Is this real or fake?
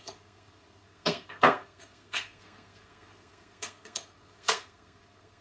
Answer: fake